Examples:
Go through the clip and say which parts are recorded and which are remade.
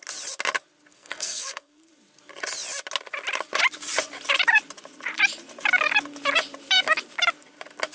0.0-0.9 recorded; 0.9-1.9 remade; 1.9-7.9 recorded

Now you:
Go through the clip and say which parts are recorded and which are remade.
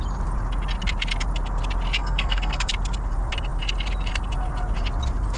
0.0-2.0 recorded; 2.0-2.7 remade; 2.7-5.4 recorded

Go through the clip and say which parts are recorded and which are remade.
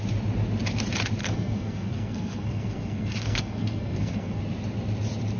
0.0-1.2 recorded; 1.2-4.4 remade; 4.4-5.4 recorded